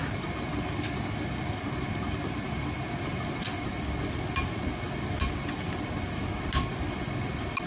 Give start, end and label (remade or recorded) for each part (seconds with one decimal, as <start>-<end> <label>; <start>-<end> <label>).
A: 0.0-7.7 recorded